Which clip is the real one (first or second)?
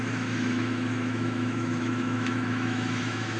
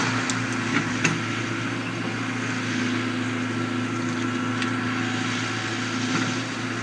second